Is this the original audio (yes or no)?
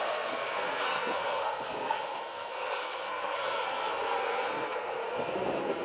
no